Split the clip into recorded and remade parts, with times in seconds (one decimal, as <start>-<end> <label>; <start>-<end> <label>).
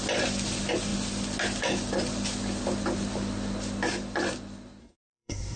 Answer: 0.0-4.8 recorded; 4.8-5.6 remade